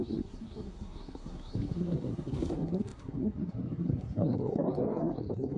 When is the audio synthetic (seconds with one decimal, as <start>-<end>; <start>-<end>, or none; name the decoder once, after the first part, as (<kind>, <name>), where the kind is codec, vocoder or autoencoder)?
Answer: 0.0-5.6 (codec, SNAC)